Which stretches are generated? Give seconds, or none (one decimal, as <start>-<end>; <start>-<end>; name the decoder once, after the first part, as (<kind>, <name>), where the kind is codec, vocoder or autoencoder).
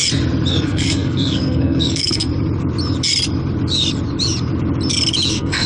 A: 0.5-2.3 (codec, SNAC); 5.3-5.7